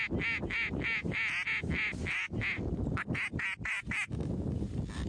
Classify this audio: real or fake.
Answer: real